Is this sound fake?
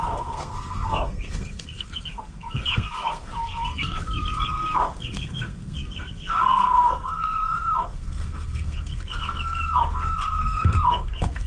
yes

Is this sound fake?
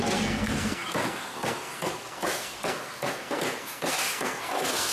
yes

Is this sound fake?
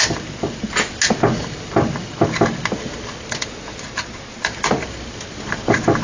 no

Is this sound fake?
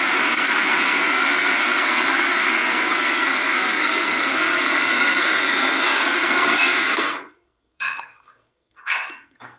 yes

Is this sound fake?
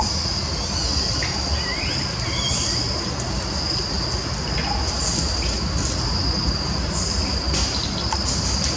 no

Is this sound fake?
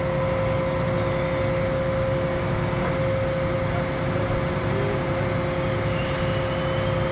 no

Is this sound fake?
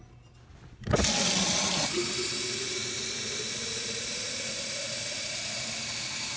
no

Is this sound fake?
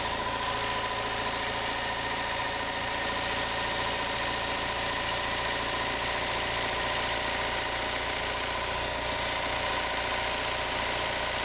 no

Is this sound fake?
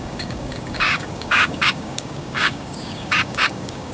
yes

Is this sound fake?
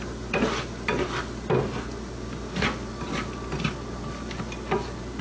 no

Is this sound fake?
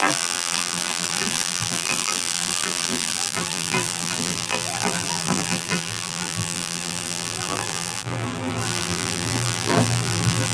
yes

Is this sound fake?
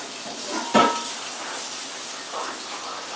no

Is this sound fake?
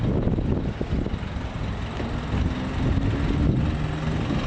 no